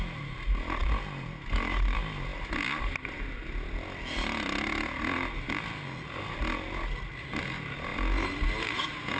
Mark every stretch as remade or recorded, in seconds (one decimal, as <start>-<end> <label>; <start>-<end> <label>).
0.0-9.2 recorded